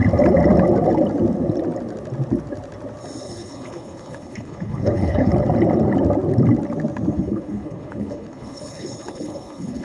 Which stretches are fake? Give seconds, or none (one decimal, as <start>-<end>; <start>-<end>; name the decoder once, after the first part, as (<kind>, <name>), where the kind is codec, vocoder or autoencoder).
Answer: 3.2-5.3 (codec, HILCodec); 7.1-9.8